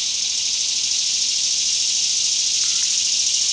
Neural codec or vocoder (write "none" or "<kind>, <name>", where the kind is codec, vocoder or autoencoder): none